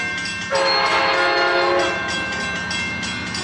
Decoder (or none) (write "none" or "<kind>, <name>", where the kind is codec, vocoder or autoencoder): none